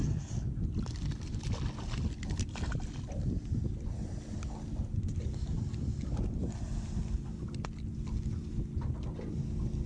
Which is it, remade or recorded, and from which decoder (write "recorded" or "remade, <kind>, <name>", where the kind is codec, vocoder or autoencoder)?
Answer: recorded